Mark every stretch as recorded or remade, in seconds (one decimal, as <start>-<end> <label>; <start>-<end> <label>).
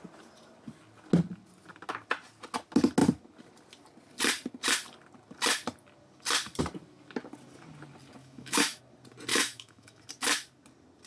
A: 0.0-8.2 recorded; 8.2-8.8 remade; 8.8-9.3 recorded; 9.3-10.0 remade; 10.0-11.1 recorded